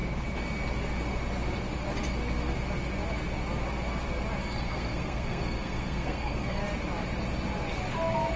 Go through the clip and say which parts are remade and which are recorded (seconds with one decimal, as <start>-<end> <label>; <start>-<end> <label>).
0.0-4.4 recorded; 4.4-6.6 remade; 6.6-8.4 recorded